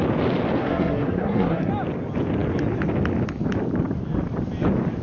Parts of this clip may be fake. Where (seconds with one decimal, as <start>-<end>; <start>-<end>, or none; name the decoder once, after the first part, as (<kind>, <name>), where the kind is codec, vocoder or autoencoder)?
0.6-1.7 (codec, SNAC)